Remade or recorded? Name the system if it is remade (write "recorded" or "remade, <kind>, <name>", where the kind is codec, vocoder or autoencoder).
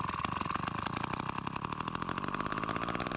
recorded